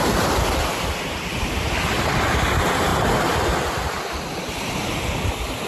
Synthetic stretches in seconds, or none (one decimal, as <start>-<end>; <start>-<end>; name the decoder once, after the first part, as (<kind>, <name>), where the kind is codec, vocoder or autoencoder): none